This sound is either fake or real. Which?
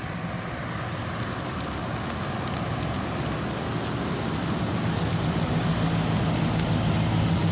real